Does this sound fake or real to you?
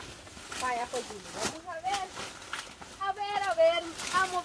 real